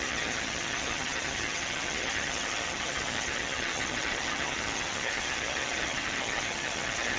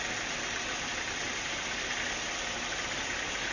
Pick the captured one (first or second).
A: second